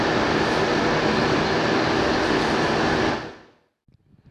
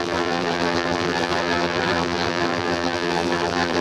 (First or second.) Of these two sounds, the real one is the first